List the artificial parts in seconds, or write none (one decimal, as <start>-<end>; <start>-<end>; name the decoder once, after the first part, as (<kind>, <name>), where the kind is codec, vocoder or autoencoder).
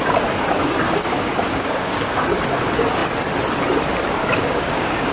1.1-2.2 (codec, DAC); 4.2-5.1